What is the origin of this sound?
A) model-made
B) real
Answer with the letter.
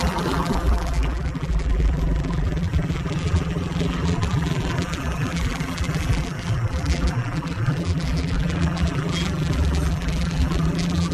A